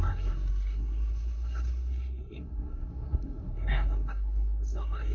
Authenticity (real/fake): fake